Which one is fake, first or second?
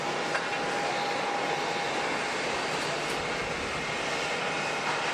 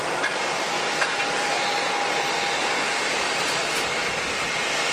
second